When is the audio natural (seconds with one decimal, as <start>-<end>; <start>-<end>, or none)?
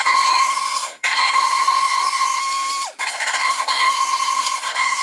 2.4-3.0